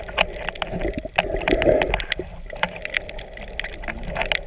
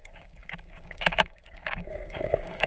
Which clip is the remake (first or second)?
second